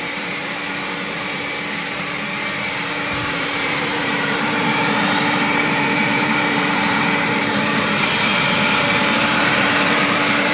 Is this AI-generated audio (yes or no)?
yes